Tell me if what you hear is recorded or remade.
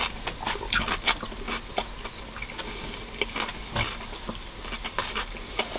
recorded